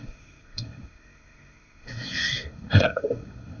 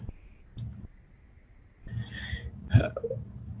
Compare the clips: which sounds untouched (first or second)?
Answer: second